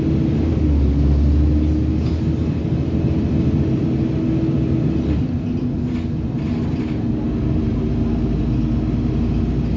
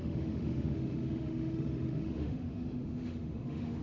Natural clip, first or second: first